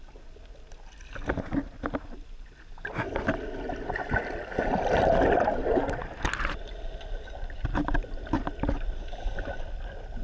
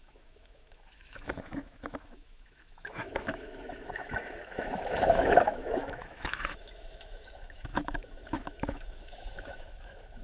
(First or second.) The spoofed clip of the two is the second